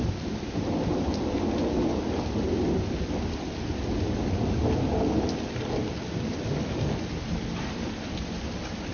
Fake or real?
real